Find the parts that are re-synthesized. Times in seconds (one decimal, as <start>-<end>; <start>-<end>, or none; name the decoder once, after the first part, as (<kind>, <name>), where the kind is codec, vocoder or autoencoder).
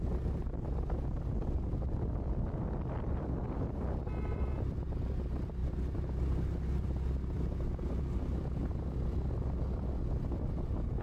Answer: none